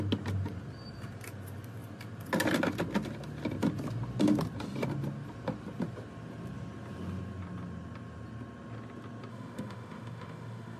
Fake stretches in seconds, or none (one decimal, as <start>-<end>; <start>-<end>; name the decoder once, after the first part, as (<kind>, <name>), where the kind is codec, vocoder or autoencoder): 9.3-10.8 (autoencoder, DAC-VAE)